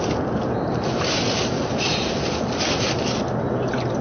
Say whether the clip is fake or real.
real